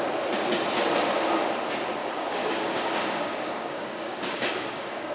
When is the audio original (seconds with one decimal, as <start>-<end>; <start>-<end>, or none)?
0.0-2.0